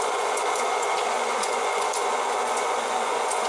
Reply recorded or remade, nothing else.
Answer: remade